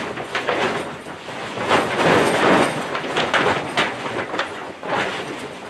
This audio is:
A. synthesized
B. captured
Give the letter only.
A